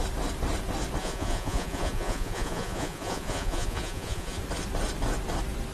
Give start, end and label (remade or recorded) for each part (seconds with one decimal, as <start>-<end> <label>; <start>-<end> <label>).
0.0-1.0 recorded; 1.0-4.4 remade; 4.4-5.7 recorded